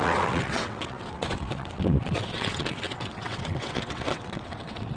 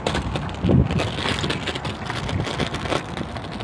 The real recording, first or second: second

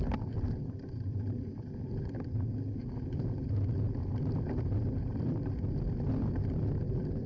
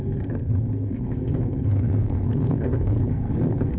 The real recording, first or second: first